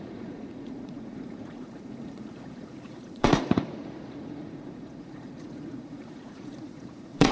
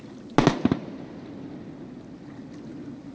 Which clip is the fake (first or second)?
first